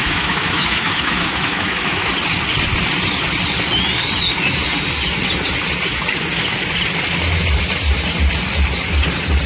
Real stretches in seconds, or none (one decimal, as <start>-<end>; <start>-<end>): 2.1-9.5